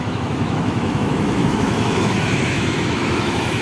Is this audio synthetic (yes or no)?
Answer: yes